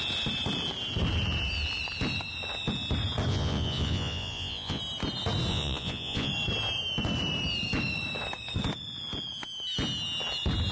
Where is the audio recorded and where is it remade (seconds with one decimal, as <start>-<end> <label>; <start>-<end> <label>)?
0.0-3.3 recorded; 3.3-4.8 remade; 4.8-5.5 recorded; 5.5-6.3 remade; 6.3-10.7 recorded